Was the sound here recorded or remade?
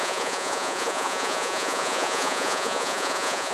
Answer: remade